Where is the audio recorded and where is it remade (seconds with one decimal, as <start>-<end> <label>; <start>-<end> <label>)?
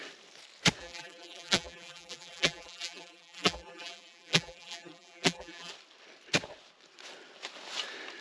0.0-0.8 recorded; 0.8-5.7 remade; 5.7-8.2 recorded